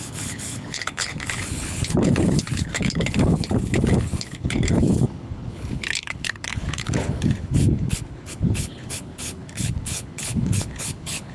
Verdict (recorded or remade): remade